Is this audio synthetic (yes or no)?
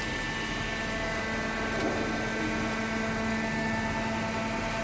no